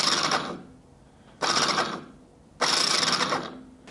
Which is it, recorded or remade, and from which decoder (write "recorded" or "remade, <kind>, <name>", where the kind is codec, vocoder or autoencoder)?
recorded